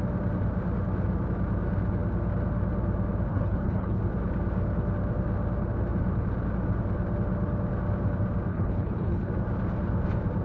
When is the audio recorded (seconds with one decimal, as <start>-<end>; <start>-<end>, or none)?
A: 0.0-3.3; 4.0-8.5; 9.3-10.4